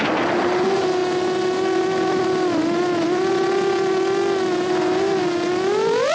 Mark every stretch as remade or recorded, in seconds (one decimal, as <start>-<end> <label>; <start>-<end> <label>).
0.0-6.1 recorded